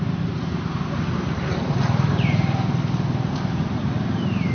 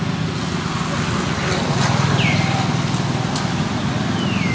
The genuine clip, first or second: second